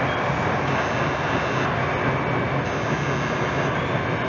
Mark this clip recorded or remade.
recorded